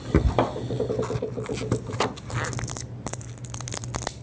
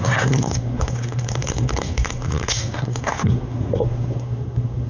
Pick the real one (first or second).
first